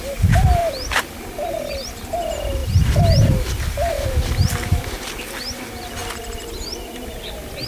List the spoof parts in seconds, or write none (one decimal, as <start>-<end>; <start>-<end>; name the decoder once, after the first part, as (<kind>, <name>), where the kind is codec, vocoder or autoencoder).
2.6-4.5 (vocoder, BigVGAN v2)